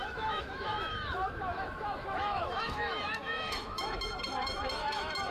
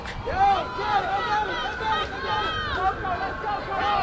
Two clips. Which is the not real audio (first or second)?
first